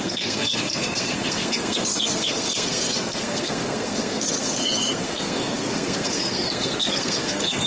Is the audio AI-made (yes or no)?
yes